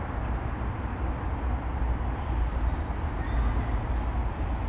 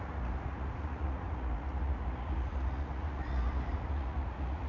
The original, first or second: first